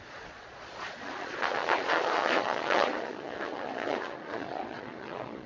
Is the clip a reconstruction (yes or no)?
yes